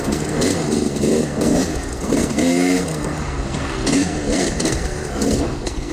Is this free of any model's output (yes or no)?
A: no